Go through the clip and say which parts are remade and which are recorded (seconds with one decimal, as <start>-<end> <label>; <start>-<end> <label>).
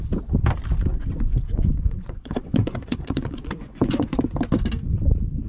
0.0-0.9 recorded; 0.9-4.2 remade; 4.2-5.5 recorded